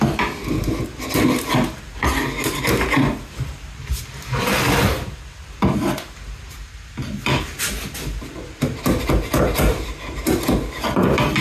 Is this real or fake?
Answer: real